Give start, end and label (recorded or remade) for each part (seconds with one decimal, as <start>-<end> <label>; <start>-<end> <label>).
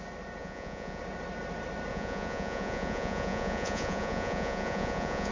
0.0-0.4 recorded; 0.4-1.0 remade; 1.0-1.9 recorded; 1.9-5.3 remade